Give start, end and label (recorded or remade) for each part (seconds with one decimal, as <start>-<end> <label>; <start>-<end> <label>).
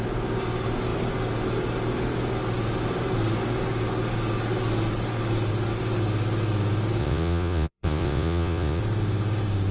0.0-7.0 recorded; 7.0-8.8 remade; 8.8-9.7 recorded